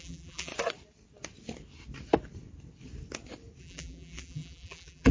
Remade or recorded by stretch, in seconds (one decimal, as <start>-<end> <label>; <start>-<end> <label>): 0.0-0.5 remade; 0.5-3.6 recorded; 3.6-5.1 remade